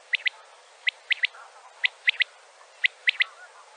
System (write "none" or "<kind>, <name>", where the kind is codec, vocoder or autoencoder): vocoder, BigVGAN v2